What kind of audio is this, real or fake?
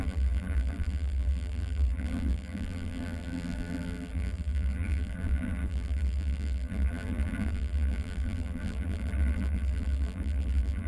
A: fake